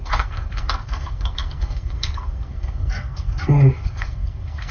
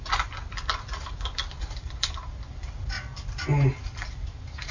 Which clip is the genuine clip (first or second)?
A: second